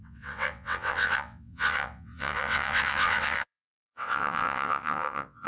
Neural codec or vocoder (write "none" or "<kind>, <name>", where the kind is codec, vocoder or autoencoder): vocoder, WaveNeXt